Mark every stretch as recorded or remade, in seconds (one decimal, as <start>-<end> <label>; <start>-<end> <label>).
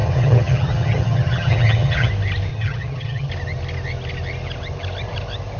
0.0-2.1 remade; 2.1-2.5 recorded; 2.5-3.3 remade; 3.3-5.6 recorded